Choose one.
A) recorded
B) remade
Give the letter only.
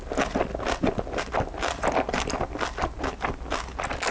A